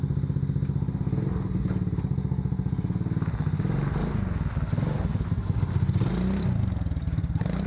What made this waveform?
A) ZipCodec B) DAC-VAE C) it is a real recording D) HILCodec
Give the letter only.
C